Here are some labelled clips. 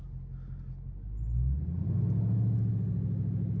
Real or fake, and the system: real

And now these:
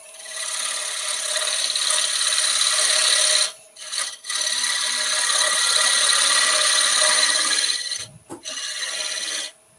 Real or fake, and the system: real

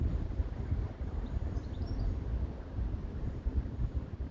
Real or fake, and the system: fake, vocoder, BigVGAN v2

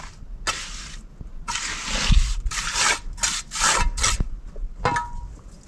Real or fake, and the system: real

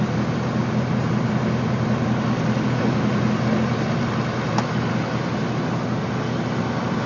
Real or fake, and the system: real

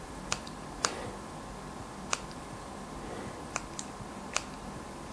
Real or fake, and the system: fake, vocoder, BigVGAN v2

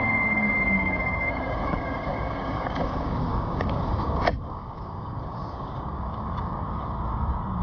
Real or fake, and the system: fake, codec, DAC